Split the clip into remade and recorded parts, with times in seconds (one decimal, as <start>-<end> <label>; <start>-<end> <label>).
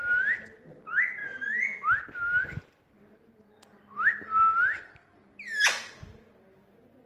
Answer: 0.0-7.1 recorded